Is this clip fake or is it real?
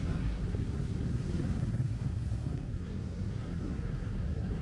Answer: fake